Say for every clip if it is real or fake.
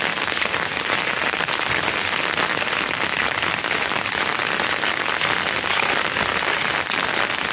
real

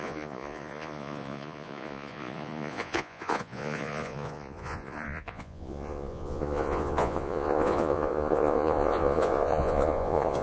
fake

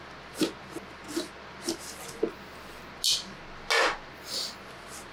real